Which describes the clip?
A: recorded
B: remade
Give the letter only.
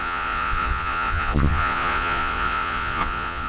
B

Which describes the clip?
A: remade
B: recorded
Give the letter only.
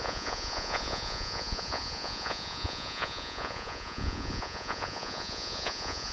A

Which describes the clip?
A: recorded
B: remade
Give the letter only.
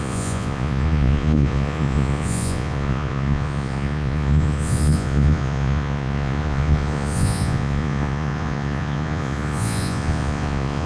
B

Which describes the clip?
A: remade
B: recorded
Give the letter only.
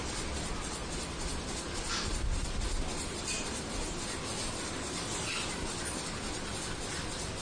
B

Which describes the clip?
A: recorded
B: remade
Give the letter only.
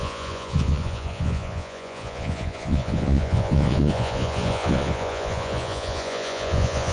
B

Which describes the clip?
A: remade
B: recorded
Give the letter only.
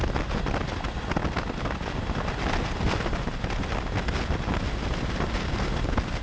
B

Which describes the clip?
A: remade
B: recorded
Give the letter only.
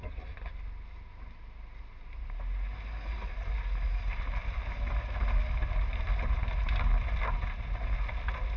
B